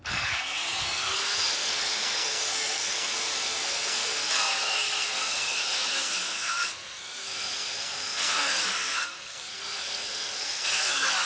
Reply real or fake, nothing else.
fake